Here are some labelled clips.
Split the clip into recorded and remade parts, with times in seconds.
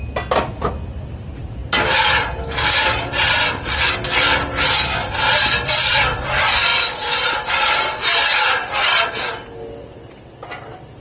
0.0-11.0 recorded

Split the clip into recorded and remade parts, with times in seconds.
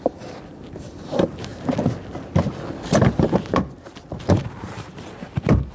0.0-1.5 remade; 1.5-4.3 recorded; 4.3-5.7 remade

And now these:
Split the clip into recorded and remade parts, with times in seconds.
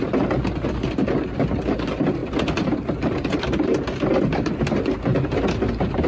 0.0-5.1 remade; 5.1-6.1 recorded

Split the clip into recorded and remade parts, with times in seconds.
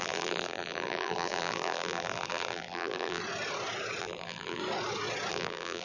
0.0-3.2 remade; 3.2-4.0 recorded; 4.0-4.6 remade; 4.6-5.3 recorded; 5.3-5.8 remade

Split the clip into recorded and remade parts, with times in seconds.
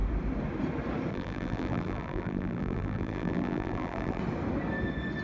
0.0-1.1 recorded; 1.1-4.2 remade; 4.2-5.2 recorded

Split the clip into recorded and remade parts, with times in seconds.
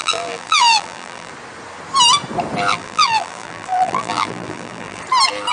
0.0-1.3 remade; 1.3-2.7 recorded; 2.7-5.0 remade; 5.0-5.5 recorded